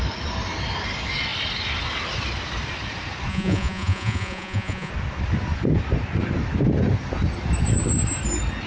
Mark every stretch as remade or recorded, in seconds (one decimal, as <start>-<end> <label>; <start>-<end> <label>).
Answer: 0.0-3.3 recorded; 3.3-4.9 remade; 4.9-8.7 recorded